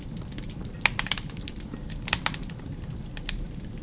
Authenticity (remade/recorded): recorded